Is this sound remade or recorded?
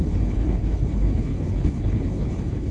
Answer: remade